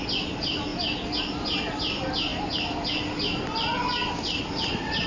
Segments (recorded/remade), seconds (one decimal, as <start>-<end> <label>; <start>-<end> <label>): 0.0-5.1 recorded